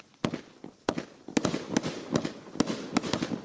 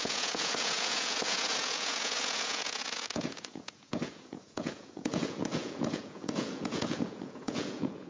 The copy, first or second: second